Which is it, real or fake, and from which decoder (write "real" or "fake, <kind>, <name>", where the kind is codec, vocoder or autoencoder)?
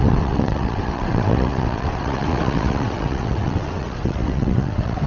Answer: fake, vocoder, WaveNeXt